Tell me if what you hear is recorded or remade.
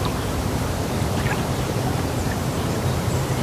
remade